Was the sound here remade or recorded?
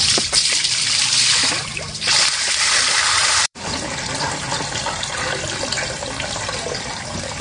remade